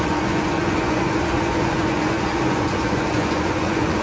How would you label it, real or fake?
fake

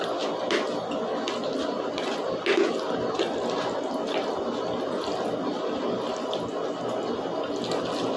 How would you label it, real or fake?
real